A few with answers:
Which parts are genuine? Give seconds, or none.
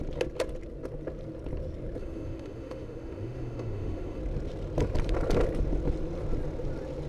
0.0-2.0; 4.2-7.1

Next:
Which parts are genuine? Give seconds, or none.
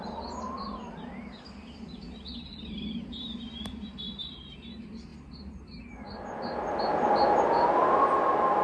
0.0-8.6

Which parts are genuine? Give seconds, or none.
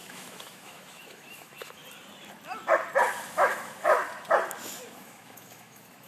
1.8-3.3; 4.0-4.9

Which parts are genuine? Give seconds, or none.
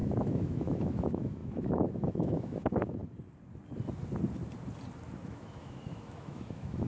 3.0-5.3